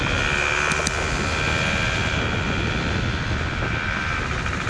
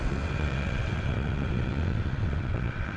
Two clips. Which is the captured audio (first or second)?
first